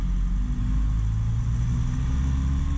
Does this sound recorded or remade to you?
recorded